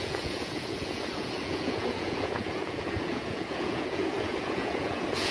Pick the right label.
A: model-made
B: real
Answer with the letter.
A